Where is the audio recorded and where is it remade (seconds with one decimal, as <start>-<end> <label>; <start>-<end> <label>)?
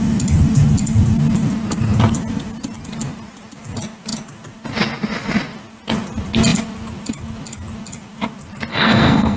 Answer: 0.0-8.7 recorded; 8.7-9.4 remade